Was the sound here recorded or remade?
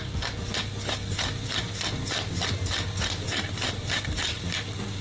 recorded